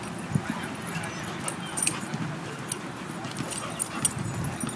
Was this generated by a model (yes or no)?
no